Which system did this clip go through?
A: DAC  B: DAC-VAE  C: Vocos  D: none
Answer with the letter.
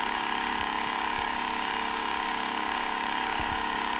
A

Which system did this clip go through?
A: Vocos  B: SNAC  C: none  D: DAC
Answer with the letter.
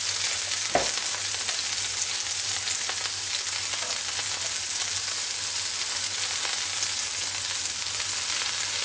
C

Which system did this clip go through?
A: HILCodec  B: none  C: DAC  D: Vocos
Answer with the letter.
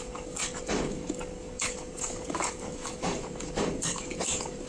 C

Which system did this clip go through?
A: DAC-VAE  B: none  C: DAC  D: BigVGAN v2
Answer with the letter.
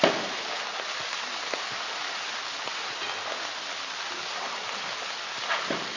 B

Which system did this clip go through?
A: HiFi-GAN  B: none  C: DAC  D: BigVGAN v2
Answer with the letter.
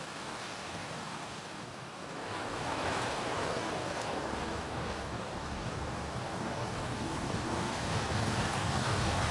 C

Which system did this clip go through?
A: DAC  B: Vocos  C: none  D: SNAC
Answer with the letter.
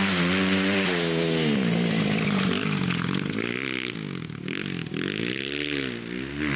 C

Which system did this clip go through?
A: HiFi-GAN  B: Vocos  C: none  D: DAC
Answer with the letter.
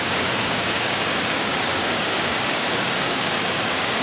D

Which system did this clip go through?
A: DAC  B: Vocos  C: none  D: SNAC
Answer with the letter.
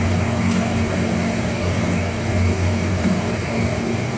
A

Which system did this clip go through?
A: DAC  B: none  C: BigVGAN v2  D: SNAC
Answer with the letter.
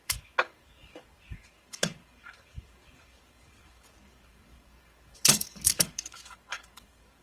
A